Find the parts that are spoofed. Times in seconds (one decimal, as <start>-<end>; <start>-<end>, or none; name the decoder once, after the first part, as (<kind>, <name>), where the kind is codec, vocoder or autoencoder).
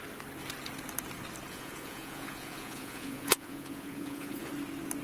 1.5-4.5 (vocoder, Vocos)